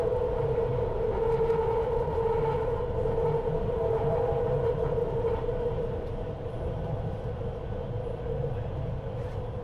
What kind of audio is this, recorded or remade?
recorded